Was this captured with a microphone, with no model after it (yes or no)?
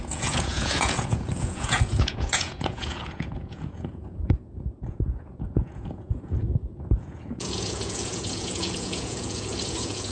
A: no